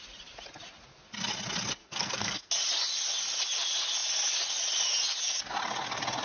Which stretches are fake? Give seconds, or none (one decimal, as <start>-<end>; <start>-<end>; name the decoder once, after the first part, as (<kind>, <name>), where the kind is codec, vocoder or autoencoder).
1.8-2.5 (codec, SNAC)